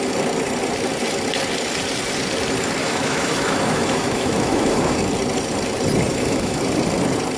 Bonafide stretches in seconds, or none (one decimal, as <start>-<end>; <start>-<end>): 0.0-2.8; 5.0-6.1; 6.6-7.4